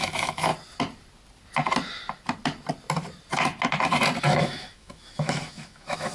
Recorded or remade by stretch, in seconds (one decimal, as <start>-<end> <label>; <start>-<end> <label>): 0.0-0.5 remade; 0.5-4.2 recorded; 4.2-6.1 remade